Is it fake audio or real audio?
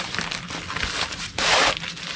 real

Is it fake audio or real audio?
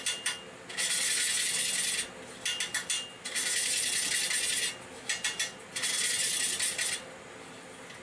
real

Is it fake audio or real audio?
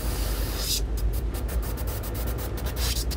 real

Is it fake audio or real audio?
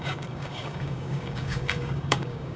fake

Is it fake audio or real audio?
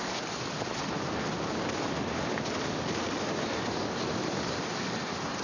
real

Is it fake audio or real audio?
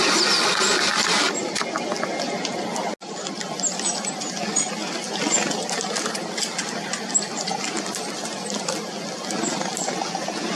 real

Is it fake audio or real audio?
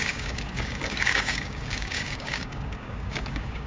fake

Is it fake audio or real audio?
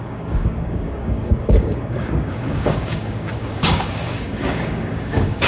fake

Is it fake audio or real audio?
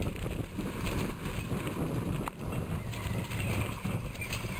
real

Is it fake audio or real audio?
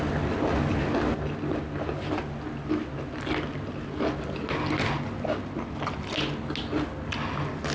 real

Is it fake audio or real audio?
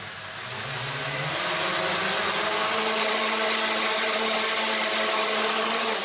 real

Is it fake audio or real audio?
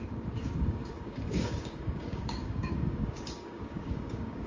fake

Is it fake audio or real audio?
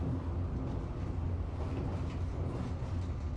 real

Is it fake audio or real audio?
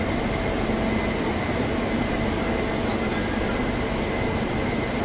real